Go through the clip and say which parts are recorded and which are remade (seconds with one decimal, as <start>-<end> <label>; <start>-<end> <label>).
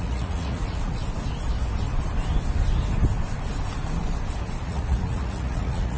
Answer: 0.0-1.0 remade; 1.0-4.6 recorded; 4.6-6.0 remade